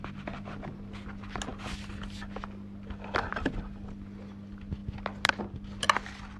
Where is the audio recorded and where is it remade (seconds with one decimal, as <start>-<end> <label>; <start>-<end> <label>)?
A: 0.0-6.4 recorded